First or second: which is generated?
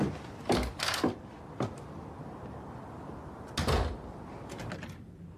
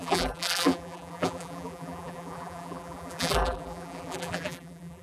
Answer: second